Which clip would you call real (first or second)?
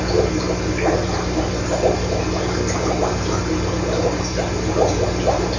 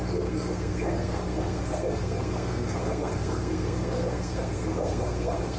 first